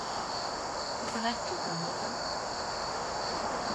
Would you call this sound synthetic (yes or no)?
yes